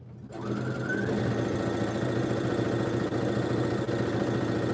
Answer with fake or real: real